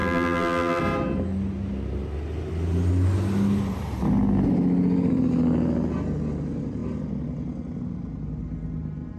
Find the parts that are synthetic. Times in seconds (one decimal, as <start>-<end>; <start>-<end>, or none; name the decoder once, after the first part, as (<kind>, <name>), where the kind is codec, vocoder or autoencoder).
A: 0.0-0.8 (vocoder, BigVGAN v2)